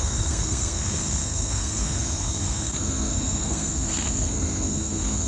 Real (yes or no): no